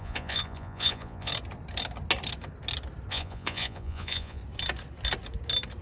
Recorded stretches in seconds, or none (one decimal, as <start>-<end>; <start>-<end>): 1.3-3.1; 4.4-5.8